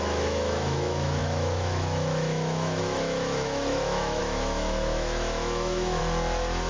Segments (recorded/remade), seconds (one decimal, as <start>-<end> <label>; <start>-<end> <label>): 0.0-6.0 remade; 6.0-6.7 recorded